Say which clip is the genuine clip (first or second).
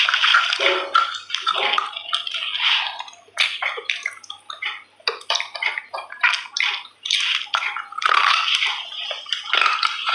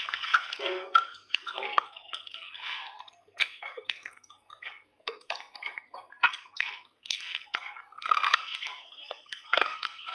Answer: first